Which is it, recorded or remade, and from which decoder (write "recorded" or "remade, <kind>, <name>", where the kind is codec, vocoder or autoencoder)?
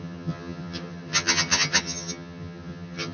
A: remade, vocoder, HiFi-GAN